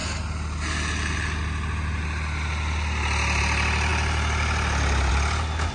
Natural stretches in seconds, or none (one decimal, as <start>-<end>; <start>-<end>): 0.0-5.7